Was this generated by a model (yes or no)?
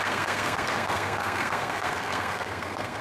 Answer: yes